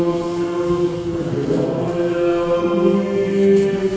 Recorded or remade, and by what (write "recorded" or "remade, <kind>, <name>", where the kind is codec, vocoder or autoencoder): remade, codec, SNAC